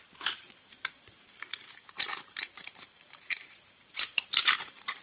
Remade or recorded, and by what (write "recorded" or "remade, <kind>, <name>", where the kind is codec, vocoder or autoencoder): remade, vocoder, BigVGAN v2